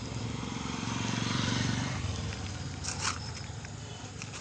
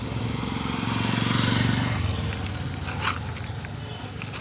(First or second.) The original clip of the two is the second